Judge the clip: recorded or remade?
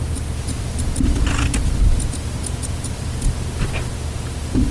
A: recorded